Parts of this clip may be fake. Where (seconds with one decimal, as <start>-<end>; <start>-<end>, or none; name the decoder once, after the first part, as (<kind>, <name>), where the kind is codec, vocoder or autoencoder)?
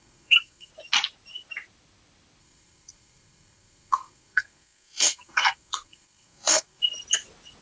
0.0-0.7 (codec, SNAC); 2.4-6.8